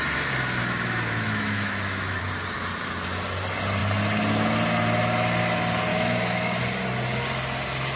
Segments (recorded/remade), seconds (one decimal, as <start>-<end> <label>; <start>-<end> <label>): 0.0-0.6 recorded; 0.6-2.2 remade; 2.2-5.9 recorded; 5.9-6.6 remade; 6.6-8.0 recorded